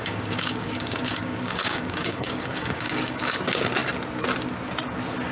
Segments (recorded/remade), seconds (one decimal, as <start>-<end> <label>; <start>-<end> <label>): 0.0-3.2 remade; 3.2-5.3 recorded